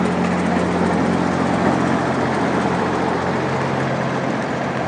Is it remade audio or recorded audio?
recorded